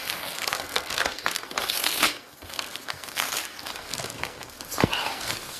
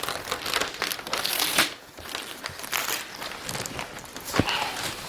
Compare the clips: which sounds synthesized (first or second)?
first